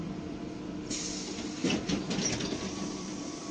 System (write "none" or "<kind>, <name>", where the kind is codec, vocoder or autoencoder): vocoder, BigVGAN v2